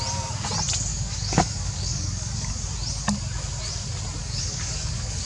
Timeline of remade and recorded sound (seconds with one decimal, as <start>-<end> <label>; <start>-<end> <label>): 0.0-0.9 recorded; 0.9-2.5 remade; 2.5-4.2 recorded; 4.2-5.2 remade